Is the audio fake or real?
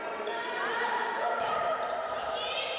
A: fake